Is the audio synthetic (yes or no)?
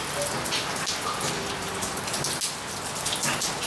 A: no